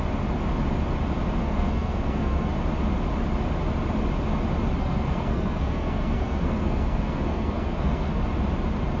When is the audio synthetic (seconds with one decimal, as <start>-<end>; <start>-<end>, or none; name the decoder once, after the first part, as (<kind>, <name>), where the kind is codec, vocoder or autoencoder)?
1.4-2.5 (codec, SNAC); 4.8-8.2